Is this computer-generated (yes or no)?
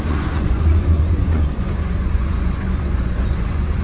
yes